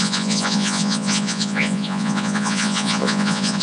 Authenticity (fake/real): fake